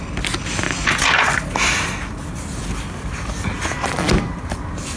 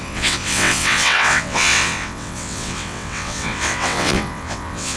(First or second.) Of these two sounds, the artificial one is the second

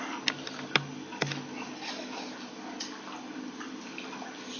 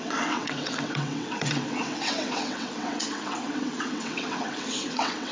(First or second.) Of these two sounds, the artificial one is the second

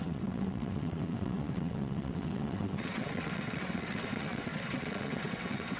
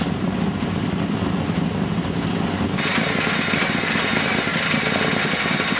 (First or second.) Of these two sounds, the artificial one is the first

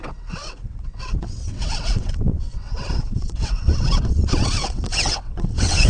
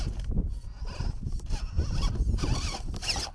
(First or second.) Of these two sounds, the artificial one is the first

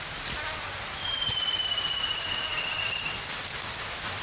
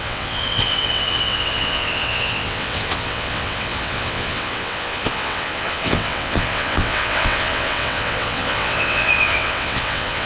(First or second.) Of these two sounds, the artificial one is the second